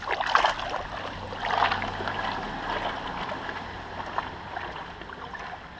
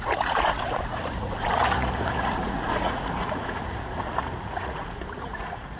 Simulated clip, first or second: second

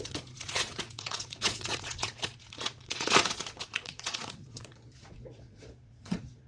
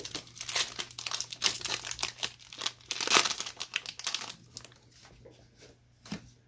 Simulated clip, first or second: first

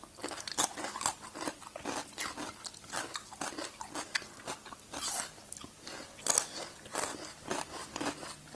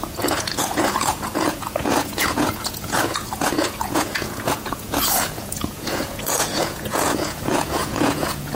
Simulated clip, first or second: second